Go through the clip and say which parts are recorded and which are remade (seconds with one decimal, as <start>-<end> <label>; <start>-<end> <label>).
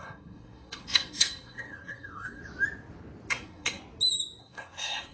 0.0-2.4 remade; 2.4-3.3 recorded; 3.3-3.8 remade; 3.8-4.4 recorded; 4.4-5.1 remade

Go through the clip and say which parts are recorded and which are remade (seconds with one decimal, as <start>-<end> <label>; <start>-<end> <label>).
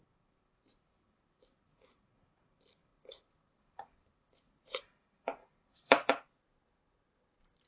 0.0-2.9 recorded; 2.9-7.7 remade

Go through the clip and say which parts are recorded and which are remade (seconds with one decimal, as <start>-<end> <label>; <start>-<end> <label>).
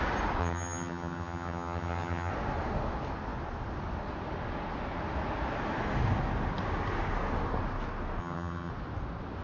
0.0-0.4 recorded; 0.4-2.3 remade; 2.3-8.2 recorded; 8.2-8.7 remade; 8.7-9.4 recorded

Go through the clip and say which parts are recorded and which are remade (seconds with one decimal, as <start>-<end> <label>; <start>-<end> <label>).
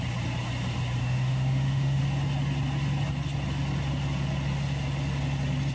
0.0-1.0 recorded; 1.0-2.0 remade; 2.0-5.7 recorded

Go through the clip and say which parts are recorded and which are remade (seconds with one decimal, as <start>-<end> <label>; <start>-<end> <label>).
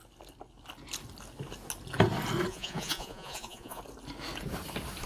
0.0-2.5 recorded; 2.5-3.8 remade; 3.8-5.1 recorded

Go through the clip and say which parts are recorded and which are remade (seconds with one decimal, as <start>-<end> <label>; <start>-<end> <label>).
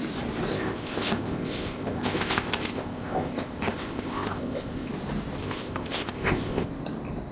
0.0-0.5 recorded; 0.5-4.9 remade; 4.9-5.4 recorded; 5.4-6.7 remade; 6.7-7.3 recorded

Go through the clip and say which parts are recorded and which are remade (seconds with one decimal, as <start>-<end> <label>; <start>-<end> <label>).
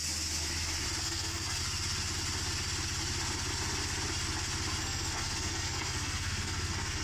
0.0-1.0 recorded; 1.0-1.6 remade; 1.6-4.8 recorded; 4.8-7.0 remade